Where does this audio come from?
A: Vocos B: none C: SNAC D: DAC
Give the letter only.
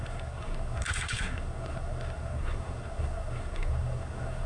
C